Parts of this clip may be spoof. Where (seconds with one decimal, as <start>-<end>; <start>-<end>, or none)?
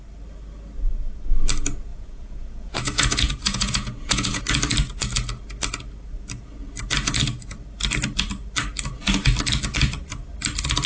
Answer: 1.9-4.4